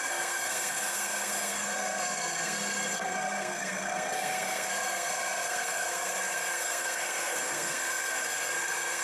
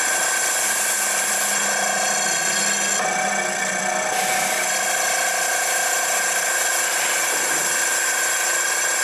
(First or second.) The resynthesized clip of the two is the first